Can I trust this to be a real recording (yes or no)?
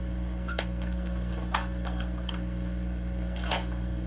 no